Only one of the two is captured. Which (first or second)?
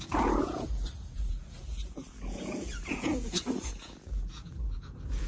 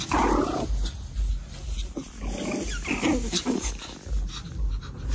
second